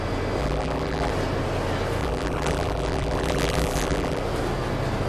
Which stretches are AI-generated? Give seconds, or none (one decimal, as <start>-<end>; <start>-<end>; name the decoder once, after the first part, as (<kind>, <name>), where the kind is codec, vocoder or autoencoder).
0.4-1.1 (vocoder, BigVGAN v2); 2.0-4.2